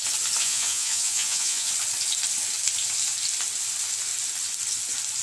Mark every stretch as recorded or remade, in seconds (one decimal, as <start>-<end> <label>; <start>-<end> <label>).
0.0-0.4 recorded; 0.4-1.7 remade; 1.7-5.2 recorded